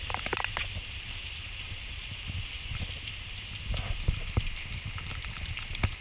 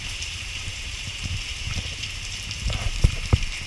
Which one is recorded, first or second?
first